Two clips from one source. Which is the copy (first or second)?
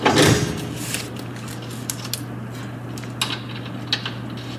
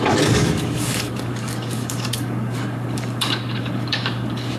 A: second